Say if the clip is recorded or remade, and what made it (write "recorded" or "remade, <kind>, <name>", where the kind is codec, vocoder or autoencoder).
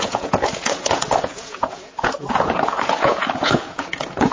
remade, vocoder, Vocos